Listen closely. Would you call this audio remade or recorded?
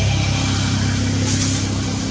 recorded